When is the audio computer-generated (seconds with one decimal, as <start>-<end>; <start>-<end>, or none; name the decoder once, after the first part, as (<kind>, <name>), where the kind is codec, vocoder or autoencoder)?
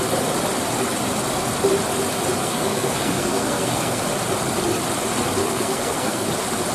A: 2.4-4.0 (codec, SNAC); 5.4-6.3